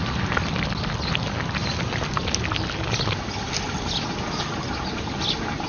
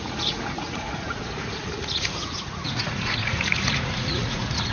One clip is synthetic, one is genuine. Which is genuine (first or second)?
first